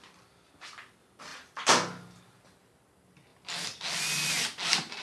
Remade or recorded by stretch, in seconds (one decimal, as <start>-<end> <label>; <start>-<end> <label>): 0.0-1.3 recorded; 1.3-2.2 remade; 2.2-5.0 recorded